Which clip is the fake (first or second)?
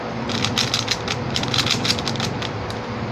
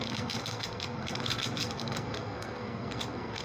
second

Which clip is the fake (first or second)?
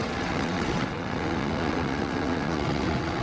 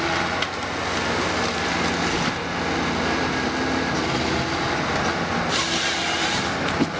first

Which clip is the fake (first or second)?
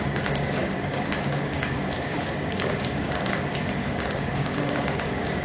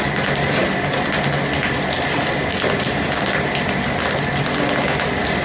first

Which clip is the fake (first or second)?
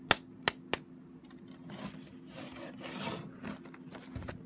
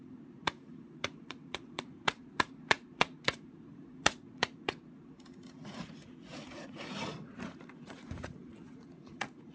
second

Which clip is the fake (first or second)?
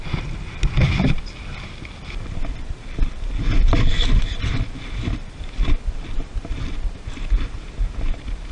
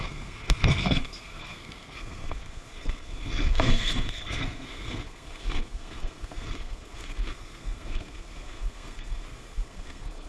second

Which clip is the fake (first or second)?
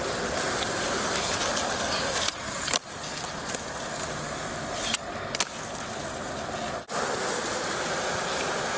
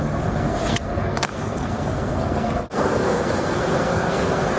second